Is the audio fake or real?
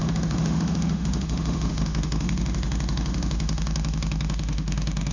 fake